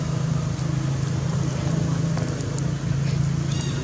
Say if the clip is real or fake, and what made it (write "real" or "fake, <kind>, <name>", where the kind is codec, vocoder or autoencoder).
real